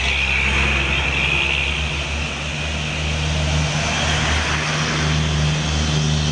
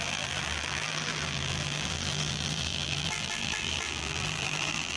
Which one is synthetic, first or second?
second